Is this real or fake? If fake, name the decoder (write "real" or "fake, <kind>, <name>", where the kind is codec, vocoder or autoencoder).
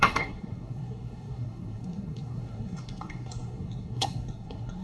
fake, codec, SNAC